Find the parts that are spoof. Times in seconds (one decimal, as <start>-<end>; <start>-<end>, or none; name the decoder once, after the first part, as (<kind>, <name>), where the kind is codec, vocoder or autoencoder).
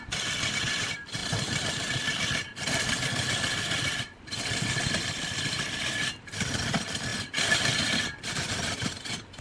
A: none